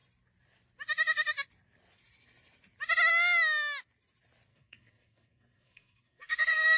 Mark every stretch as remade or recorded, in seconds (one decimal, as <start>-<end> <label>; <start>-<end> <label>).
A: 0.0-4.5 recorded; 4.5-6.8 remade